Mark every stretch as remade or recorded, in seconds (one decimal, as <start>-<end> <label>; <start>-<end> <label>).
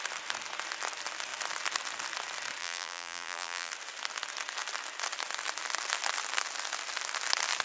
0.0-2.6 recorded; 2.6-3.7 remade; 3.7-7.6 recorded